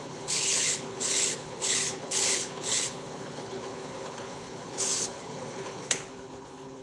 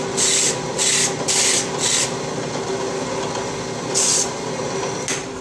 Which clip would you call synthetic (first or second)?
first